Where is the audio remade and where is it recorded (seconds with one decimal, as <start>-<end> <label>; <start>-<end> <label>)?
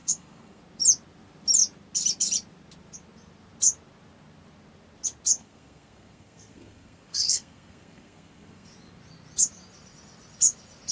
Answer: 0.0-0.6 remade; 0.6-5.4 recorded; 5.4-8.7 remade; 8.7-10.9 recorded